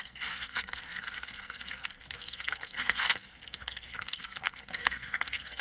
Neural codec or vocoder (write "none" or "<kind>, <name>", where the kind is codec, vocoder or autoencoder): codec, SNAC